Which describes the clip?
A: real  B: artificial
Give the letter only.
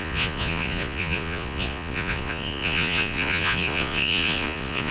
B